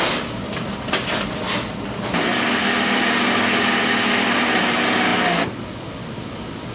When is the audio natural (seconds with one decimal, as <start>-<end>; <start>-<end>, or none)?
0.0-6.7